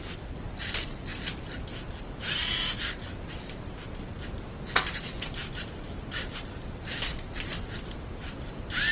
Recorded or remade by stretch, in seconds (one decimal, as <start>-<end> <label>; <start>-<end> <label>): 0.0-1.1 remade; 1.1-4.9 recorded; 4.9-6.9 remade; 6.9-8.9 recorded